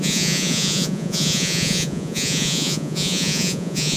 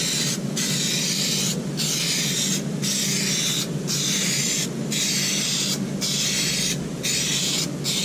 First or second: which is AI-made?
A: first